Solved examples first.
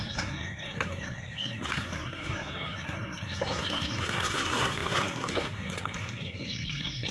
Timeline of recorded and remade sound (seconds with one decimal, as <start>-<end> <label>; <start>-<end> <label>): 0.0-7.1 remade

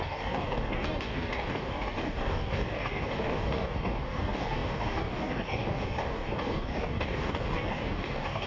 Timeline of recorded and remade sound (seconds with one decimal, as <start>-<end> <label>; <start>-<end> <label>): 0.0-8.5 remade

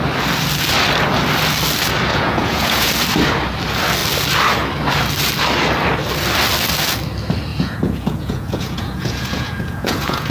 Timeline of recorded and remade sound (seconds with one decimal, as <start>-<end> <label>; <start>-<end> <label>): 0.0-2.1 recorded; 2.1-2.9 remade; 2.9-7.5 recorded; 7.5-10.3 remade